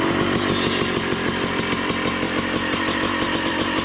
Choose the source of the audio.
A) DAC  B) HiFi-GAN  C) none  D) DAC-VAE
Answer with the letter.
C